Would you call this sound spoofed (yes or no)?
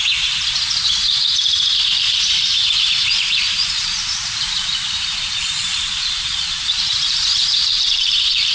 yes